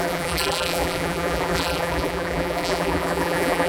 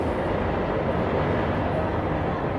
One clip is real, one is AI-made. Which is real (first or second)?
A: second